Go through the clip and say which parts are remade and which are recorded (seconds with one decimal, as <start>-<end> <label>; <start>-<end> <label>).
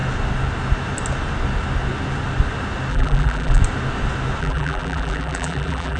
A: 0.0-2.9 recorded; 2.9-3.6 remade; 3.6-4.4 recorded; 4.4-6.0 remade